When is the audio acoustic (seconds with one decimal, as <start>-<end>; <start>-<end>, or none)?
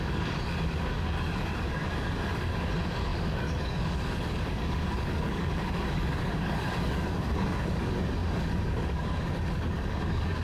none